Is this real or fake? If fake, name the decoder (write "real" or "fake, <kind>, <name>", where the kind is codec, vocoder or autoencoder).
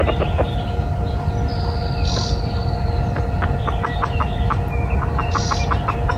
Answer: real